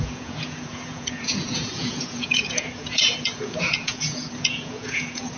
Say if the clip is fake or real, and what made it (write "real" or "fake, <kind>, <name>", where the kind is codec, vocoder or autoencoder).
fake, vocoder, Vocos